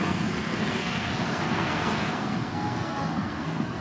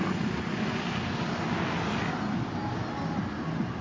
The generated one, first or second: first